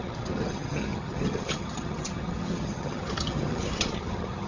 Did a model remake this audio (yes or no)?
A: yes